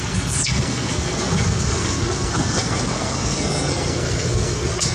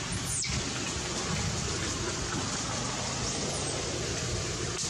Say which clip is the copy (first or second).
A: first